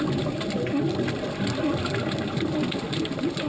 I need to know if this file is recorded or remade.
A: recorded